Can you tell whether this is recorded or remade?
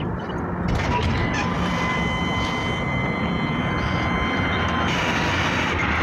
recorded